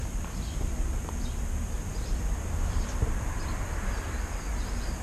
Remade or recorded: remade